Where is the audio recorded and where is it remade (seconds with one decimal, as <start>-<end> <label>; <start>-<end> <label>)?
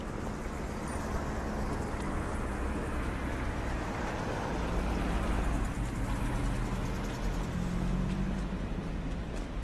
0.0-2.5 recorded; 2.5-3.1 remade; 3.1-9.6 recorded